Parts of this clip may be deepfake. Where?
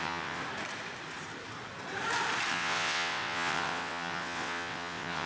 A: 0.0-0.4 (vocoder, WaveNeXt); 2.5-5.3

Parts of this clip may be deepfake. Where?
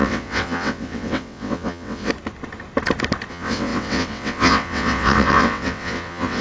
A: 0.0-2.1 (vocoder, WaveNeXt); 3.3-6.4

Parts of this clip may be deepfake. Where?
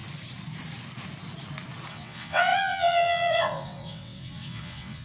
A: 1.9-5.0 (vocoder, WaveNeXt)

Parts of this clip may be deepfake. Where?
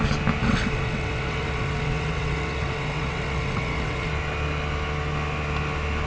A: 0.4-4.1 (vocoder, WaveNeXt)